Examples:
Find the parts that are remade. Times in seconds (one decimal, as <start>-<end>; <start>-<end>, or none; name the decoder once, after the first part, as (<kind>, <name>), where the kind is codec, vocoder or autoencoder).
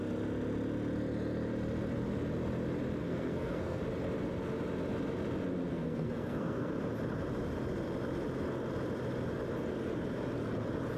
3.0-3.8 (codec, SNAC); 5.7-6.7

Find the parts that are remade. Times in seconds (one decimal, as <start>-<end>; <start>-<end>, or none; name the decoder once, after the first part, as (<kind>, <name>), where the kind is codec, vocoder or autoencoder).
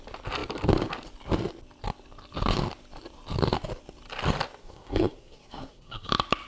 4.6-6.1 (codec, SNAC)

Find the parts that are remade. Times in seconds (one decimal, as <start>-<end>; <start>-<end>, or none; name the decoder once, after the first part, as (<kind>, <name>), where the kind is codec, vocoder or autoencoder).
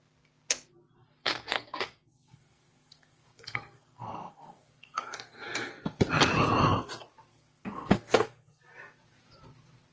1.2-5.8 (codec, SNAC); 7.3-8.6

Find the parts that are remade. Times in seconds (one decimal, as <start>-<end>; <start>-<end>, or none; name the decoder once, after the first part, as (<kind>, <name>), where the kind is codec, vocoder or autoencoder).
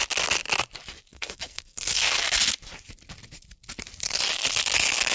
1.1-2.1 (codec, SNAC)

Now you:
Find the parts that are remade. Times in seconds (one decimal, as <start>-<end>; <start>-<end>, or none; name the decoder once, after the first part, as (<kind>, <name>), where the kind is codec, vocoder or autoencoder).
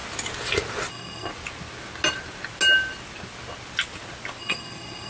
0.9-1.3 (codec, SNAC); 4.4-5.1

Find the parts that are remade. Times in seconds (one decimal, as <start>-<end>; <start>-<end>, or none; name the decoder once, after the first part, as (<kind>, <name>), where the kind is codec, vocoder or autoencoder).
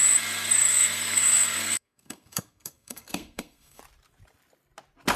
0.7-3.8 (codec, SNAC)